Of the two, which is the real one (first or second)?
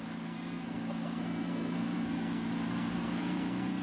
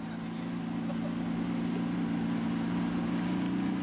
second